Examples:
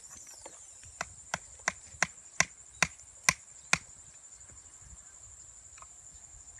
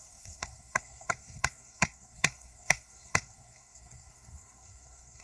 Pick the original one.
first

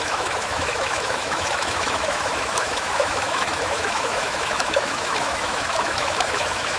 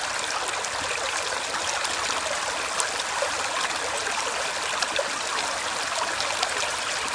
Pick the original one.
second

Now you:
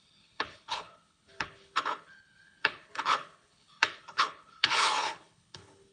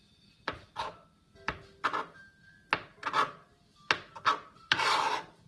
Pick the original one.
second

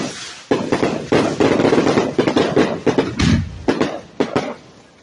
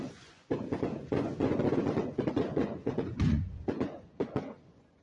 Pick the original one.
first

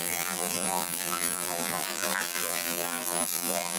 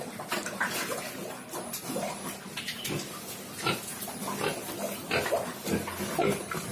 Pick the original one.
second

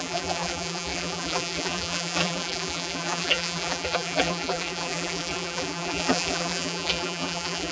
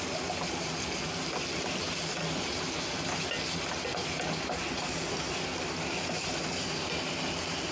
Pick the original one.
second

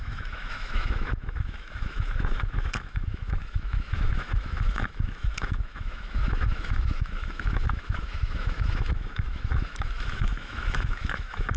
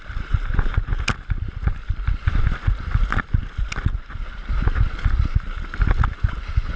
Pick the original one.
second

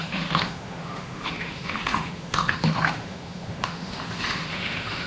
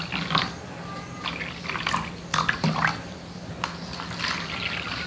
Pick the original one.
second